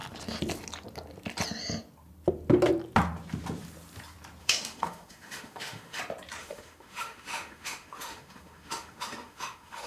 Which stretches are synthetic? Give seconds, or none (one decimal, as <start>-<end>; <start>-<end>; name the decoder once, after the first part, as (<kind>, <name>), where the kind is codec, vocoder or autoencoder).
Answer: 4.4-6.0 (autoencoder, DAC-VAE); 6.4-9.9